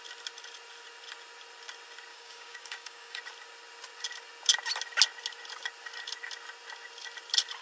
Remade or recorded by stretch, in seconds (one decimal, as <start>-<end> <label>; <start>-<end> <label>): 0.0-2.1 recorded; 2.1-3.2 remade; 3.2-7.6 recorded